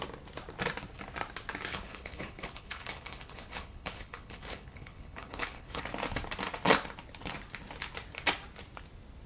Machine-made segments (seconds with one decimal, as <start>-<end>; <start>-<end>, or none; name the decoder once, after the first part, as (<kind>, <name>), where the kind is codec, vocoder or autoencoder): 1.7-5.8 (codec, HILCodec)